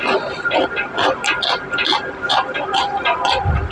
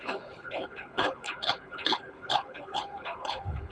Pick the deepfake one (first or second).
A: second